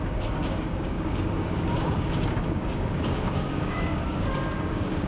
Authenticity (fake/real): fake